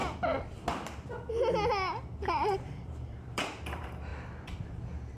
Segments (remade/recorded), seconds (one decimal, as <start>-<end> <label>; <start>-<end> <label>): 0.0-2.3 recorded; 2.3-5.2 remade